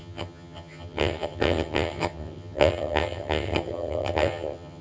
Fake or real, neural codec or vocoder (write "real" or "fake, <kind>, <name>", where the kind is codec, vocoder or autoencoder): fake, vocoder, HiFi-GAN